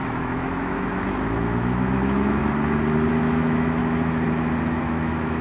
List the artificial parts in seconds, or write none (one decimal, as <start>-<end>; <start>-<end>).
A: 0.0-2.4; 3.1-3.8; 4.8-5.4